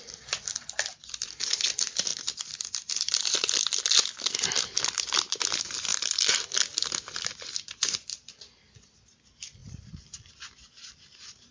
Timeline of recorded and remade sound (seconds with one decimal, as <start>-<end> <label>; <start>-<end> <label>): 0.0-5.9 recorded; 5.9-7.3 remade; 7.3-9.6 recorded; 9.6-10.3 remade; 10.3-11.5 recorded